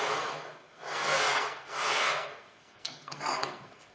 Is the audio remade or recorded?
remade